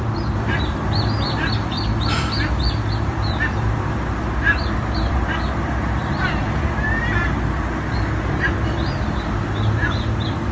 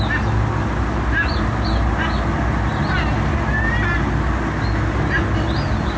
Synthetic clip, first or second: first